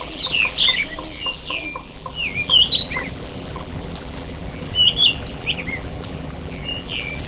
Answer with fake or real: fake